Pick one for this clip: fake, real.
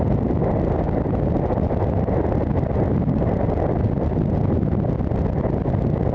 real